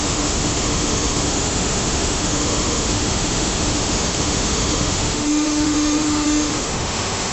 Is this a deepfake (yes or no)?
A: yes